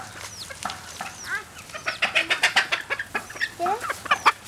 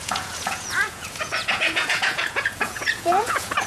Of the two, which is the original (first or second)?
first